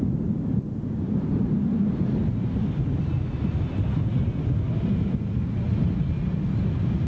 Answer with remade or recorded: recorded